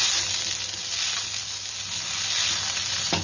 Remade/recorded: recorded